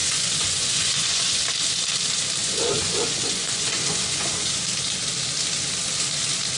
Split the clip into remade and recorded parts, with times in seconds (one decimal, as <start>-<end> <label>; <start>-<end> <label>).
0.0-1.4 remade; 1.4-2.4 recorded; 2.4-4.6 remade; 4.6-6.6 recorded